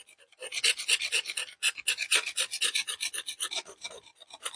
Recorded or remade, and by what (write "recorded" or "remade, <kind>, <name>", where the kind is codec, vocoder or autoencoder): recorded